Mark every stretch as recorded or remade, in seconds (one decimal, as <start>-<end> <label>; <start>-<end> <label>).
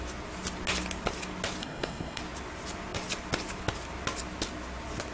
0.0-1.6 recorded; 1.6-2.2 remade; 2.2-5.1 recorded